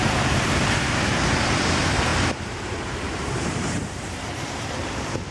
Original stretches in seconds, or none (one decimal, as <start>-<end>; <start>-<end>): none